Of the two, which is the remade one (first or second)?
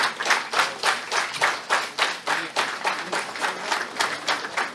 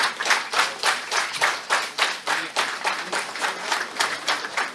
second